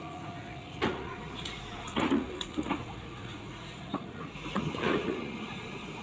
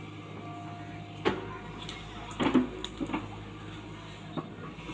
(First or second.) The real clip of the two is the second